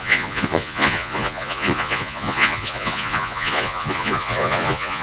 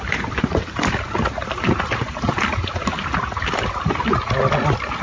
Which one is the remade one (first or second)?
first